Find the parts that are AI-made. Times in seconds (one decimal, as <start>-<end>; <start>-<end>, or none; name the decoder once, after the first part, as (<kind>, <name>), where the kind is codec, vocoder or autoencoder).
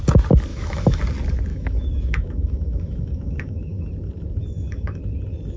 0.5-1.0 (autoencoder, DAC-VAE); 1.5-3.8; 4.4-5.0